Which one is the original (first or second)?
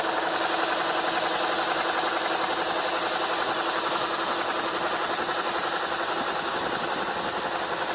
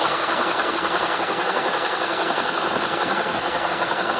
first